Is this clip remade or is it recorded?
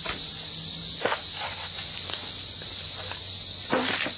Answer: recorded